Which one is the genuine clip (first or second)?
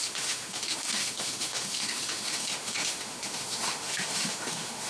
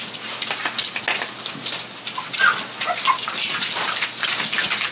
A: second